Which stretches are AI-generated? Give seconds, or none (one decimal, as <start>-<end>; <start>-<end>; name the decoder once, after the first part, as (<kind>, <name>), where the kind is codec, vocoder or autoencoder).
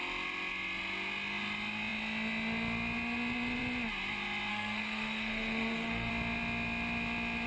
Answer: 4.5-6.1 (codec, SNAC)